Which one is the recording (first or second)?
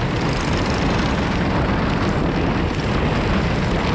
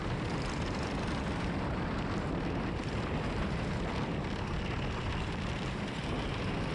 first